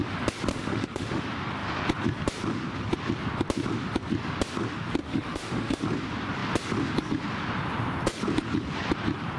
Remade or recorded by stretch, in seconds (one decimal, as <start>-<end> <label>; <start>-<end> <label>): 0.0-0.5 recorded; 0.5-1.2 remade; 1.2-5.0 recorded; 5.0-5.8 remade; 5.8-9.4 recorded